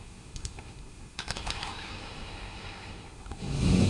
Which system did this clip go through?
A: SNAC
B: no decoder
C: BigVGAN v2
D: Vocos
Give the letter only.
A